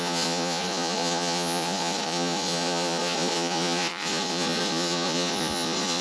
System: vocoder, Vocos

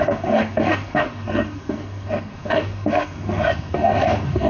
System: codec, SNAC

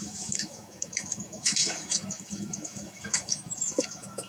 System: autoencoder, DAC-VAE